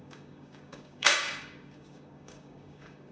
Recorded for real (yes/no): no